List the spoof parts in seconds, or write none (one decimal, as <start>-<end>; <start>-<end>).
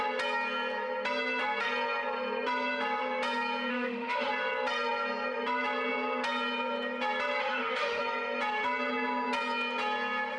3.7-4.3; 7.4-8.0